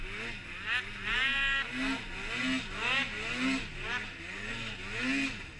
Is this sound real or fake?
real